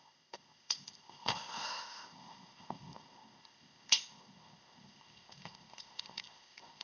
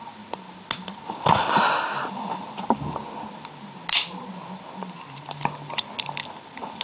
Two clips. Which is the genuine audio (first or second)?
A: second